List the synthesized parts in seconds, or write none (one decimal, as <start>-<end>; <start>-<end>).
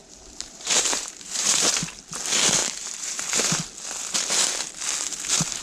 0.0-1.7; 2.6-3.2